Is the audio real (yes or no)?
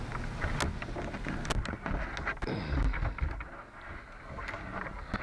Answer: yes